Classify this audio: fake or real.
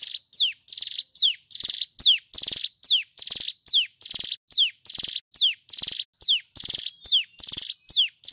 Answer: real